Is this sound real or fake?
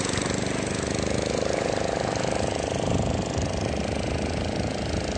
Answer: real